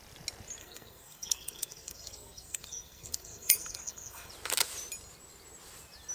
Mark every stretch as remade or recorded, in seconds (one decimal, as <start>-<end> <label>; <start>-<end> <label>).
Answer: 0.0-0.6 recorded; 0.6-4.3 remade; 4.3-6.1 recorded